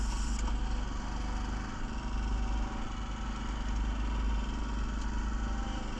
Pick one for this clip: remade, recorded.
recorded